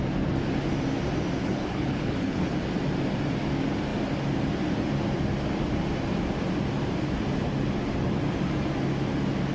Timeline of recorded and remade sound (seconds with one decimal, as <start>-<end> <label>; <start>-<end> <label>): 0.0-1.4 recorded; 1.4-2.5 remade; 2.5-9.5 recorded